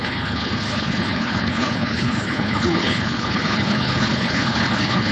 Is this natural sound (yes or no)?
no